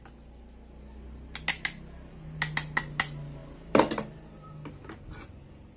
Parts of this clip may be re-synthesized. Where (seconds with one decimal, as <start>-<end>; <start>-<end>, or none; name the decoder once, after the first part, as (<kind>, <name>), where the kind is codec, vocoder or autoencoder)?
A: none